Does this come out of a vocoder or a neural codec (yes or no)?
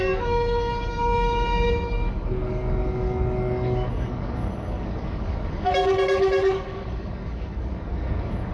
yes